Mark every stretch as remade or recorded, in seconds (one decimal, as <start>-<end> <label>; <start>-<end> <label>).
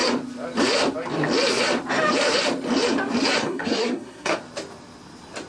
0.0-3.4 recorded; 3.4-4.4 remade; 4.4-5.5 recorded